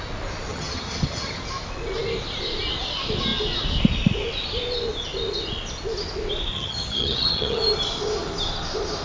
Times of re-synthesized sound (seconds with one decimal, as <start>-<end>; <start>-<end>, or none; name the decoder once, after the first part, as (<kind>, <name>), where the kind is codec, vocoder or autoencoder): 0.5-1.4 (vocoder, HiFi-GAN); 6.5-7.6

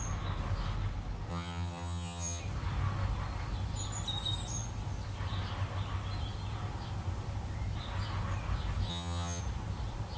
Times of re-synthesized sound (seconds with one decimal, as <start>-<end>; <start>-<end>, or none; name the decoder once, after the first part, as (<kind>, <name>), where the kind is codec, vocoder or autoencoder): 1.3-2.4 (vocoder, HiFi-GAN); 8.9-9.4

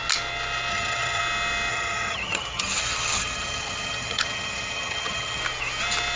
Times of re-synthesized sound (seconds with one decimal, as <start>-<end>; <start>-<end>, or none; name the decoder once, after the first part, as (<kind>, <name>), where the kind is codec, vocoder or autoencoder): 0.7-1.2 (vocoder, HiFi-GAN); 1.7-5.4

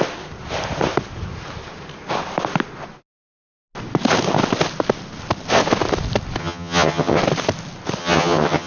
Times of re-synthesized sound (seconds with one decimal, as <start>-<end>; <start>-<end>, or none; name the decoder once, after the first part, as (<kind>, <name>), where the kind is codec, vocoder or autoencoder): 6.4-7.2 (vocoder, HiFi-GAN); 8.0-8.7

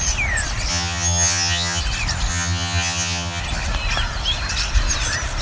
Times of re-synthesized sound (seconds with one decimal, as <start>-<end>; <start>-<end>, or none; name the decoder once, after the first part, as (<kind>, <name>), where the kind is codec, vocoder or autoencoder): 0.7-1.8 (vocoder, HiFi-GAN); 2.3-3.4

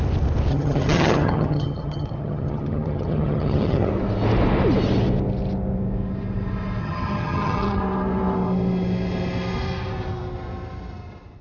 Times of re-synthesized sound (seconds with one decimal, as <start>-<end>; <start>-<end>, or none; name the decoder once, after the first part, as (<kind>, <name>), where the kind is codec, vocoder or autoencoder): 0.5-3.9 (vocoder, HiFi-GAN); 6.8-7.8